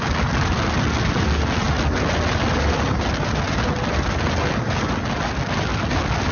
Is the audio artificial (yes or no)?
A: no